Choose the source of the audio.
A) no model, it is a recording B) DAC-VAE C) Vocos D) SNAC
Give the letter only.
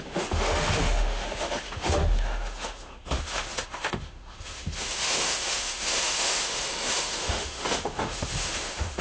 B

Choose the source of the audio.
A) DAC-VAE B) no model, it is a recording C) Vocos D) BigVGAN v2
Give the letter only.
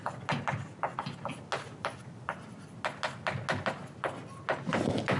B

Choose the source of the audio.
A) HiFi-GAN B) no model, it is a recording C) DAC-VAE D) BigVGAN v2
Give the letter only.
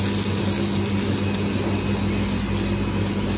B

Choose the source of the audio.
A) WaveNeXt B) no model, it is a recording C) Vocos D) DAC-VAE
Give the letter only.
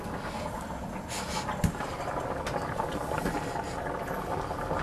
B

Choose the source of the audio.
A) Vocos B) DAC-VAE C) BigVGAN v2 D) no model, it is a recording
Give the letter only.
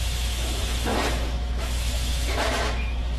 B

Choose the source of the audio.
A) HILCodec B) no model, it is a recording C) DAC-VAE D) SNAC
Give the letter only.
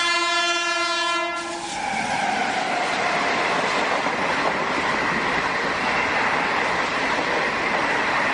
B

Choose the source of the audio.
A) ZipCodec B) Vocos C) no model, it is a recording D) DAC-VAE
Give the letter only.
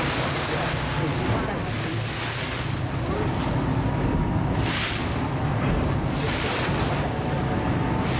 C